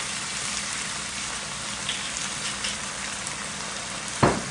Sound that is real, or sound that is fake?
fake